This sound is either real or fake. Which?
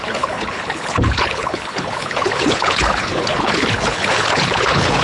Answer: fake